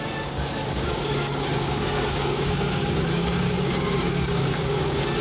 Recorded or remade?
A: remade